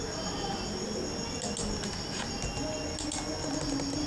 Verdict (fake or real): real